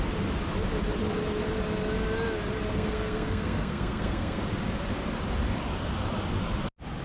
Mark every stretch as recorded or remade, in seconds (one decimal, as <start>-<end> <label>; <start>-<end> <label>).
0.0-2.7 recorded; 2.7-4.4 remade; 4.4-7.0 recorded